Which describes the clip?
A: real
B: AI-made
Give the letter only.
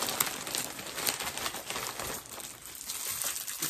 A